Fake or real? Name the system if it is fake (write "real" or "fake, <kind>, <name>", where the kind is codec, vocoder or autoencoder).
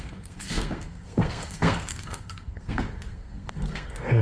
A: fake, codec, SNAC